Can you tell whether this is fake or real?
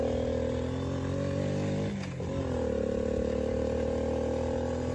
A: real